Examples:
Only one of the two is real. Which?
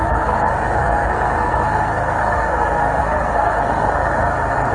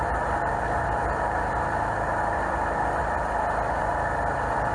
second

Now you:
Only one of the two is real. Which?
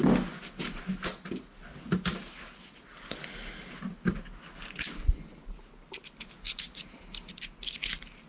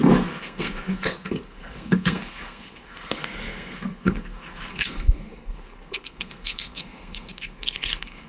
first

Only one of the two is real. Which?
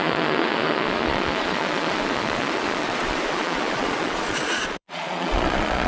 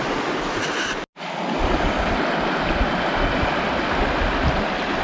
second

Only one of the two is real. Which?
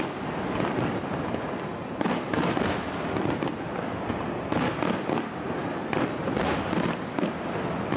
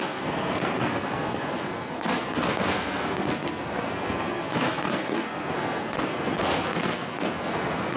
first